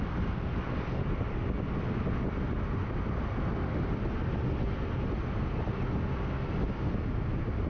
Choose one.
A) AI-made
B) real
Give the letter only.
B